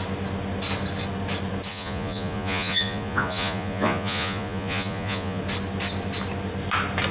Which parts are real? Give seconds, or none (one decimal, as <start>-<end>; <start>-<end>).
0.0-1.7; 5.4-7.1